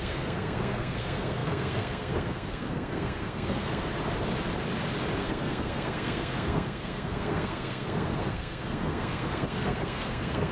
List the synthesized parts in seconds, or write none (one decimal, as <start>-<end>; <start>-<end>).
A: 0.0-3.9; 5.2-10.5